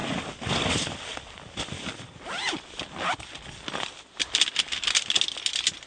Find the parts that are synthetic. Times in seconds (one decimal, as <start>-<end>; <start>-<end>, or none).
none